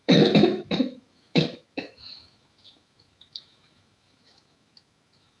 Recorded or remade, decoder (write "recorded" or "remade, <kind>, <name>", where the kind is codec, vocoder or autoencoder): remade, autoencoder, DAC-VAE